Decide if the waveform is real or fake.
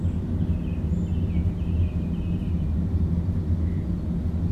real